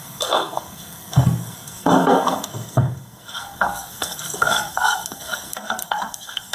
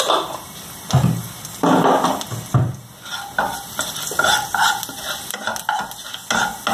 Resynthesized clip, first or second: first